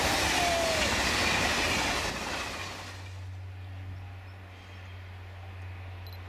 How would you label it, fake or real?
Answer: real